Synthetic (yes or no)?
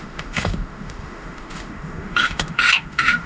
yes